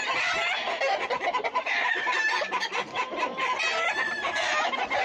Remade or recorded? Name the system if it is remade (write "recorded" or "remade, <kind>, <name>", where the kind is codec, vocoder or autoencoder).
recorded